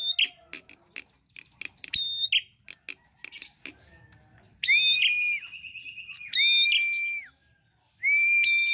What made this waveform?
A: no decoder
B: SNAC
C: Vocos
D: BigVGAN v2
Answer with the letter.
A